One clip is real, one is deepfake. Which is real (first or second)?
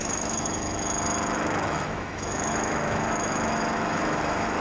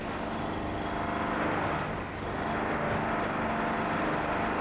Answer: second